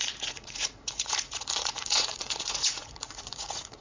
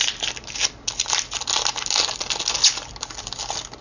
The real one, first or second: second